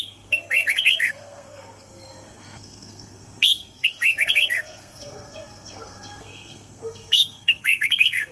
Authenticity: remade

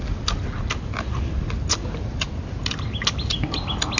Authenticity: recorded